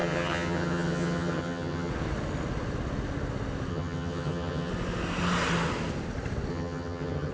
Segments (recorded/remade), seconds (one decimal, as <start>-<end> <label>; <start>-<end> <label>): 0.0-1.9 remade; 1.9-3.7 recorded; 3.7-4.7 remade; 4.7-6.5 recorded; 6.5-7.3 remade